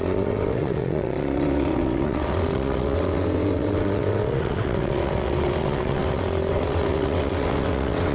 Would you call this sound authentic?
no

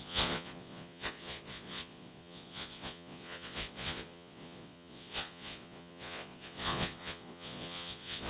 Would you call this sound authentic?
no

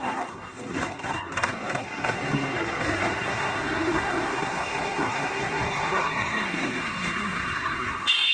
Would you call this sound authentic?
no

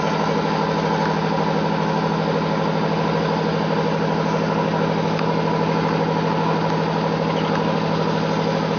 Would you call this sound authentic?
yes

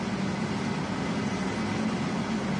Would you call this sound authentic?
yes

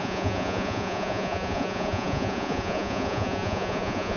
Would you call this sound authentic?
no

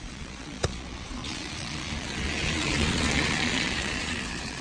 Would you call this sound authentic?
no